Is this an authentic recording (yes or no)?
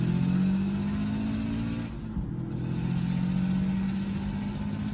yes